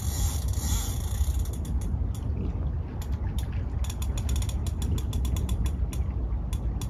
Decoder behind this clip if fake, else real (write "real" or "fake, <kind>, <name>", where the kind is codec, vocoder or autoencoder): real